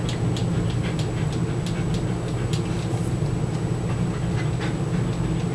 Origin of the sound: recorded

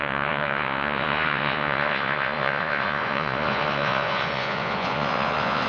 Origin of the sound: remade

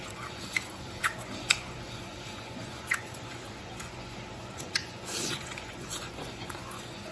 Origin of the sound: remade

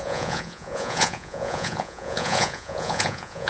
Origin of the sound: remade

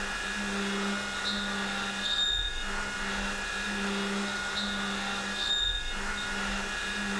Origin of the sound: recorded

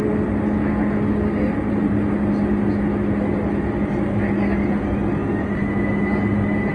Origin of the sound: recorded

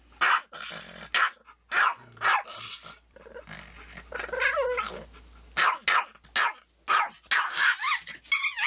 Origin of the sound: recorded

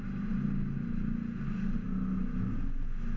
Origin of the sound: recorded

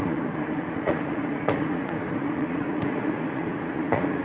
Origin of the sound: remade